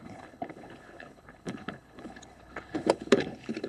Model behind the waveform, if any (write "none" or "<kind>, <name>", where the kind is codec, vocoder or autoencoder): codec, HILCodec